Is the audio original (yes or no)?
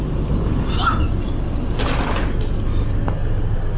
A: yes